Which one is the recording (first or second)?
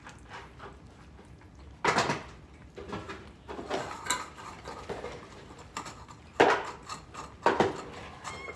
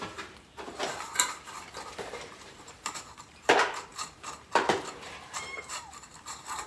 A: first